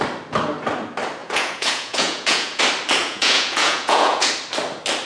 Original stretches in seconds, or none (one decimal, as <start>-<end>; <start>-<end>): 0.0-1.2; 2.6-3.0; 4.3-5.1